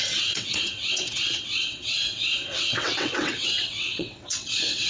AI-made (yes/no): yes